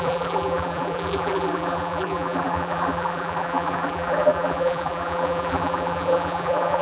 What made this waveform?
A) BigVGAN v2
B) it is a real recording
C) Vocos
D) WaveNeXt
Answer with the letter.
A